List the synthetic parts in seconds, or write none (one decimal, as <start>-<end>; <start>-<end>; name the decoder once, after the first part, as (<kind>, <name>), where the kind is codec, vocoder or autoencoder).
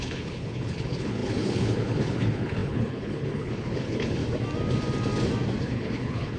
0.0-4.2 (codec, HILCodec); 5.6-6.4